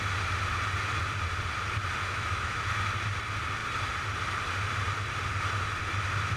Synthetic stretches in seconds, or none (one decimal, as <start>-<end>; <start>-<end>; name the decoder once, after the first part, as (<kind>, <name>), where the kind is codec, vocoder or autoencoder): 2.0-2.6 (autoencoder, DAC-VAE)